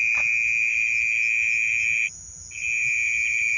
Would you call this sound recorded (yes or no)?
yes